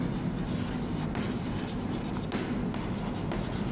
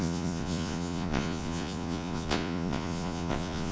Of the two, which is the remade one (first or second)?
second